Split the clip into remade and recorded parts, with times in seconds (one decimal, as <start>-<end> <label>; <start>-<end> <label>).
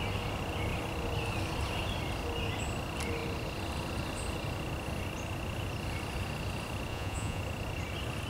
0.0-6.9 recorded; 6.9-7.4 remade; 7.4-8.3 recorded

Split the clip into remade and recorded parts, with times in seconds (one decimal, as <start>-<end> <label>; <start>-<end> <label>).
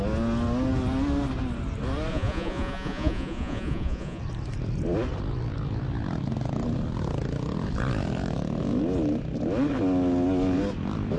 0.0-2.1 recorded; 2.1-4.2 remade; 4.2-11.2 recorded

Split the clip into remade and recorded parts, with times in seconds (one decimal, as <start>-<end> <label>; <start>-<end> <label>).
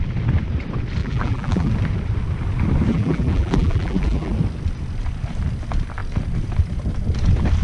0.0-1.0 recorded; 1.0-1.7 remade; 1.7-2.9 recorded; 2.9-4.3 remade; 4.3-7.6 recorded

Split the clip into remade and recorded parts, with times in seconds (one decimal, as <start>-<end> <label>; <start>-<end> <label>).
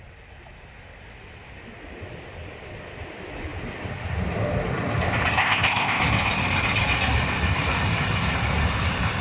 0.0-5.4 recorded; 5.4-6.0 remade; 6.0-9.2 recorded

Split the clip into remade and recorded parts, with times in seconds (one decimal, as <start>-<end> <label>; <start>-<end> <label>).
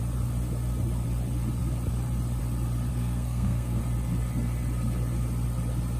0.0-2.9 recorded; 2.9-3.8 remade; 3.8-6.0 recorded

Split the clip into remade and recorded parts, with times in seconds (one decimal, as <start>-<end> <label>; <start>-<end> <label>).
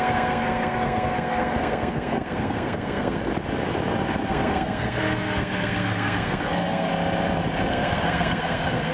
0.0-3.3 remade; 3.3-4.3 recorded; 4.3-6.9 remade; 6.9-7.7 recorded; 7.7-8.9 remade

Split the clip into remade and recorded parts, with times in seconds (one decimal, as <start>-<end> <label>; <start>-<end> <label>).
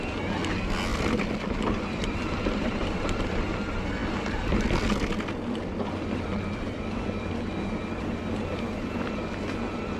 0.0-0.9 recorded; 0.9-3.5 remade; 3.5-4.0 recorded; 4.0-9.2 remade; 9.2-10.0 recorded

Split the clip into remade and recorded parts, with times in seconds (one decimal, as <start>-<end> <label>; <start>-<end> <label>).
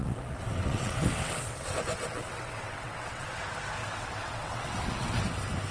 0.0-3.4 remade; 3.4-3.8 recorded; 3.8-5.2 remade; 5.2-5.7 recorded